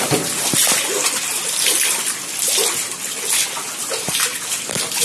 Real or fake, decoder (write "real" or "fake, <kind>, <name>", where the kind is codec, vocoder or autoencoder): real